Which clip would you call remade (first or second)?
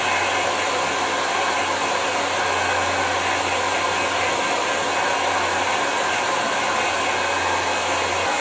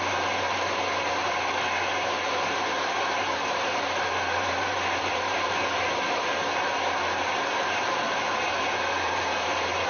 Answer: second